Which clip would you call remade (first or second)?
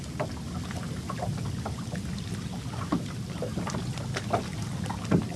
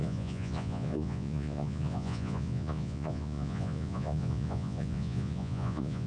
second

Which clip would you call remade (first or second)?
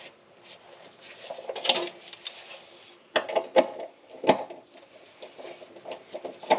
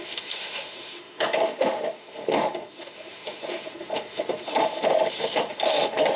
second